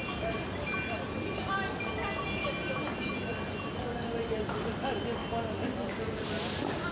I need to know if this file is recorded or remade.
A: recorded